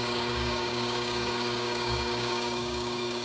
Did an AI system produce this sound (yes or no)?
yes